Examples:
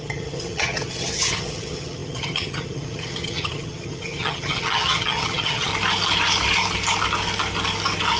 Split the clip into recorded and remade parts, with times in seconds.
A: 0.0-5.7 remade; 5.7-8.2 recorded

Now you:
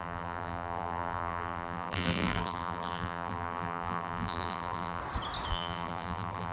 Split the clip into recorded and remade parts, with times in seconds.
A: 0.0-5.0 remade; 5.0-5.5 recorded; 5.5-6.5 remade

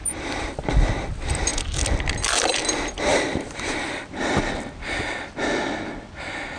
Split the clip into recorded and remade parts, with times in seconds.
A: 0.0-3.1 recorded; 3.1-4.5 remade; 4.5-6.6 recorded